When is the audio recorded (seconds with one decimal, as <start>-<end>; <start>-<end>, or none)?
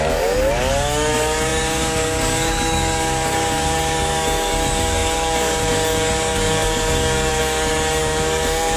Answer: none